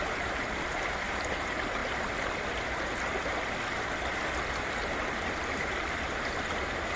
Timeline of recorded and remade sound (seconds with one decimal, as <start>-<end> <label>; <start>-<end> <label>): 0.0-1.8 remade; 1.8-4.5 recorded; 4.5-7.0 remade